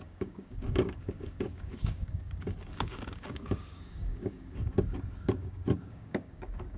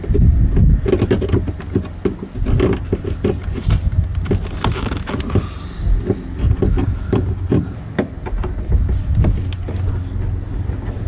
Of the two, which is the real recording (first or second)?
second